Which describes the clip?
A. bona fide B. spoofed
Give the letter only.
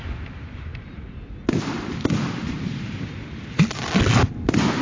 A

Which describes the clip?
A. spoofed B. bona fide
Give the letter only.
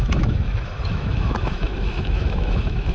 A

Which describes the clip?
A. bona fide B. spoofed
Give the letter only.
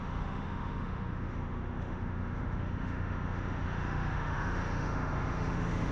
B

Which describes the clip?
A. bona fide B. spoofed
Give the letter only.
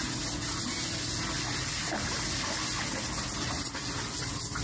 A